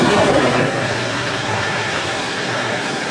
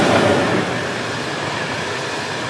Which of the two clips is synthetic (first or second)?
first